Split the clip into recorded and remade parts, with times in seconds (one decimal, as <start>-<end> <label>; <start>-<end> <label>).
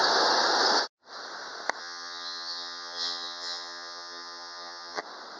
0.0-1.8 recorded; 1.8-5.0 remade; 5.0-5.4 recorded